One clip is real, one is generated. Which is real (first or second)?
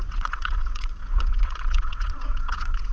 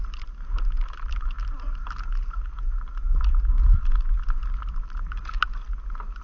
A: second